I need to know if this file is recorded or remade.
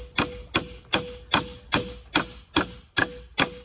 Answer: recorded